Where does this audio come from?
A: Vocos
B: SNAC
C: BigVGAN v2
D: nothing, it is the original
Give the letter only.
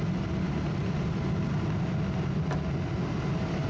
D